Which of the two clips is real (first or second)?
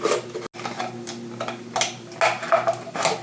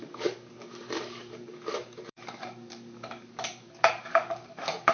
first